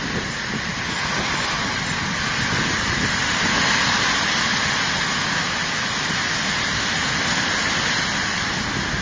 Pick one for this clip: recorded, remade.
recorded